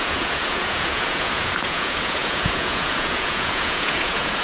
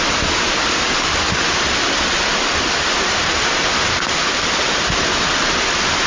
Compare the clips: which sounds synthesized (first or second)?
first